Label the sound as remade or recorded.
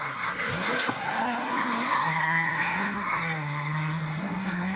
remade